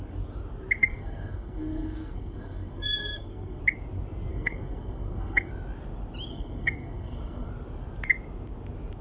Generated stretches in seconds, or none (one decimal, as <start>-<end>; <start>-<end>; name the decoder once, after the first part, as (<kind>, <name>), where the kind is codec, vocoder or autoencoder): 0.8-3.6 (codec, SNAC); 4.3-5.5; 6.3-7.5